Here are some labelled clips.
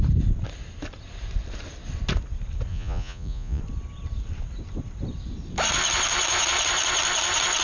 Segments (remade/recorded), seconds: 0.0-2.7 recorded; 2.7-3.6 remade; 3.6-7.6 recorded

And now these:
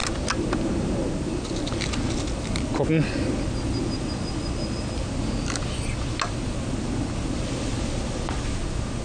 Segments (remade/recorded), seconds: 0.0-9.0 recorded

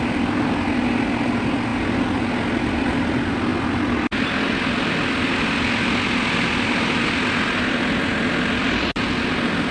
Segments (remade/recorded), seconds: 0.0-9.7 recorded